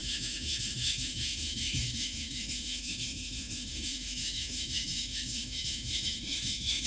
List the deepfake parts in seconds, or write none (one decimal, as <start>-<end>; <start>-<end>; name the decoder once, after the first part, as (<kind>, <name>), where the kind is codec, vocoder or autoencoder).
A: 0.0-6.9 (autoencoder, DAC-VAE)